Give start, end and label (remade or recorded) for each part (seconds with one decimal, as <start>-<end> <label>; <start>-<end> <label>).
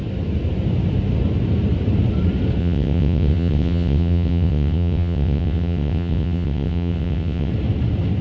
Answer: 0.0-2.6 recorded; 2.6-7.5 remade; 7.5-8.2 recorded